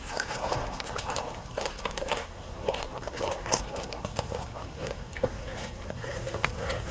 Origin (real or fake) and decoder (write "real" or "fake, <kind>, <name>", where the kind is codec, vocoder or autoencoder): fake, codec, SNAC